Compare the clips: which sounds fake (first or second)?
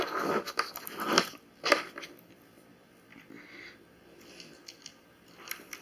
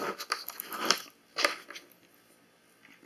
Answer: first